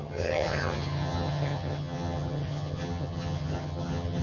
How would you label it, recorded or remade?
remade